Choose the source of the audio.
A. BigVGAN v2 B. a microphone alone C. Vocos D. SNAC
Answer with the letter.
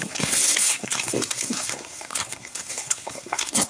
D